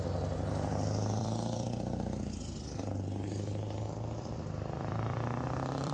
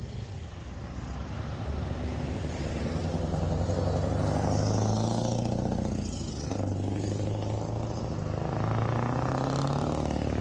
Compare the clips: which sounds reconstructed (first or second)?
first